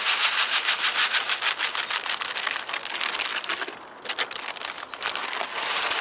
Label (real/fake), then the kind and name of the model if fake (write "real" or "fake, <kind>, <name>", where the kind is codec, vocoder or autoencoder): real